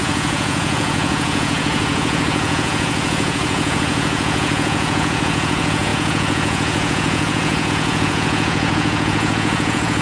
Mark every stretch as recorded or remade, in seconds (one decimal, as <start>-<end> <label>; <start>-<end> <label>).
0.0-10.0 remade